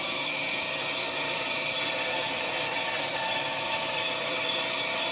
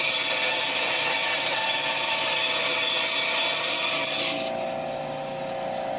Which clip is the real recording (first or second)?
second